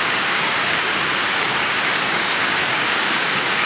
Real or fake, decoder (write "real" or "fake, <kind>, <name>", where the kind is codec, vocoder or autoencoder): fake, codec, DAC